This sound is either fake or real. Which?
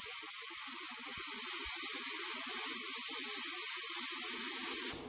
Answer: real